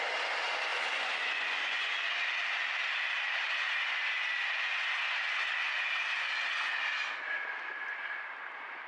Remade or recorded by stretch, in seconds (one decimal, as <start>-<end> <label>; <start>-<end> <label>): 0.0-0.7 recorded; 0.7-2.1 remade; 2.1-8.9 recorded